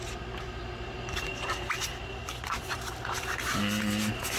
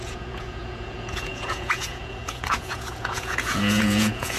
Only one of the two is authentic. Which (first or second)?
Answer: first